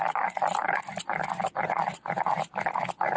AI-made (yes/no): no